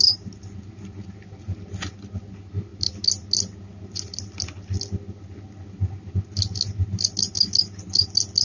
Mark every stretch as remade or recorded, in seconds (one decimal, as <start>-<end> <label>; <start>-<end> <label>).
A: 0.0-8.4 recorded